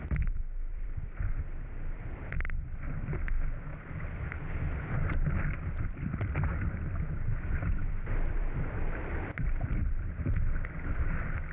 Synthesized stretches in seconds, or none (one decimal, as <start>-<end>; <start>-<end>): 0.7-2.3; 7.8-10.7